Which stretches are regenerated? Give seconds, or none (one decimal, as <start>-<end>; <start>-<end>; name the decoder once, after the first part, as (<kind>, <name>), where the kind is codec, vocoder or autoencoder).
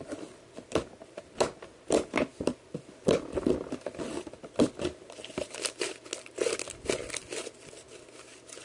none